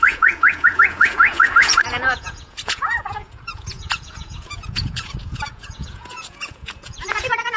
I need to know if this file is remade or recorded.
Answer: remade